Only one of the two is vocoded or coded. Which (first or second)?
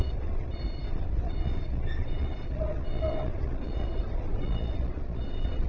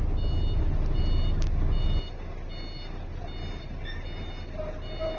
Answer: first